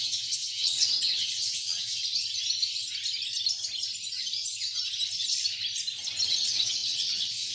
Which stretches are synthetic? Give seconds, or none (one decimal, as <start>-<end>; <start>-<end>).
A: 0.0-2.0; 6.3-7.5